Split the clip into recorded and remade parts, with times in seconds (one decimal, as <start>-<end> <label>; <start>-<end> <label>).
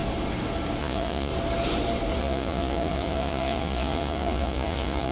0.0-0.8 recorded; 0.8-1.3 remade; 1.3-2.2 recorded; 2.2-5.1 remade